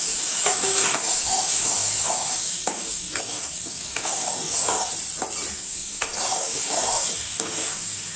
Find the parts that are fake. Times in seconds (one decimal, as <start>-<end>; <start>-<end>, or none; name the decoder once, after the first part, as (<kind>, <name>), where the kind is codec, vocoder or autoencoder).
0.0-4.9 (codec, DAC); 5.5-8.2